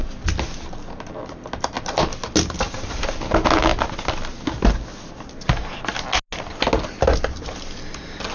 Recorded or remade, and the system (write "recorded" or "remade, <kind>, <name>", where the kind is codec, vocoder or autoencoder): recorded